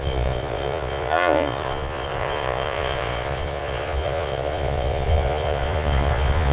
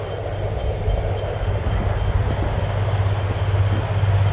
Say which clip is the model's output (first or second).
first